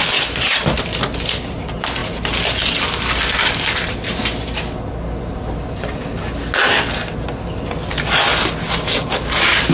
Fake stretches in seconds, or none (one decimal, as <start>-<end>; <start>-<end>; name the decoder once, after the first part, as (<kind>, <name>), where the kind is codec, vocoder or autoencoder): none